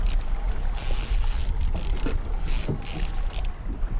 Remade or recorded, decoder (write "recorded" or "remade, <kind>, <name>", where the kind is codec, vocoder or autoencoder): recorded